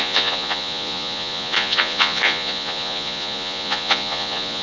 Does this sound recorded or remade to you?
remade